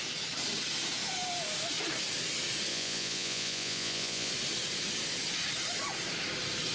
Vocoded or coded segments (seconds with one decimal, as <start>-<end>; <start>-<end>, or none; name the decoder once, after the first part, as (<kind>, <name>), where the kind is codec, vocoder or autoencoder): 2.7-4.3 (vocoder, Vocos)